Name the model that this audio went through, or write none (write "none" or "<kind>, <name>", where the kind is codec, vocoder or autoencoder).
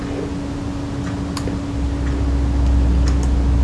none